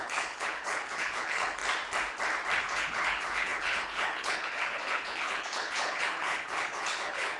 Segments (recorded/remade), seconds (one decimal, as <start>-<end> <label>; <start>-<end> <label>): 0.0-1.6 remade; 1.6-2.6 recorded; 2.6-7.4 remade